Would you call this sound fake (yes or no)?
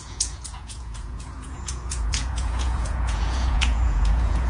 yes